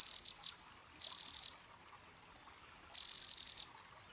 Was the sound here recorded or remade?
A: recorded